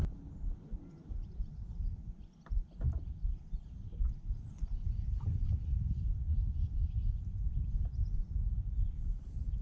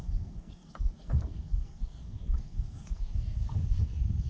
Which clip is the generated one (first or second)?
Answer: second